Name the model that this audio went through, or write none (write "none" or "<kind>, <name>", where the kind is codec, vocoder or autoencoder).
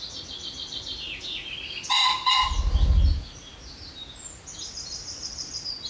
none